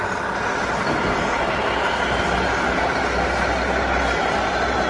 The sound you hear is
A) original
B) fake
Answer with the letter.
A